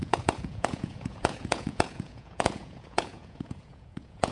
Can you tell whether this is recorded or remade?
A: remade